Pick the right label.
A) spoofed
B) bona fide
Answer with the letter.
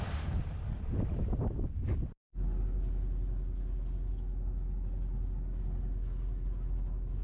B